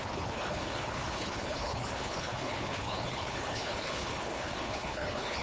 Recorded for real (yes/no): no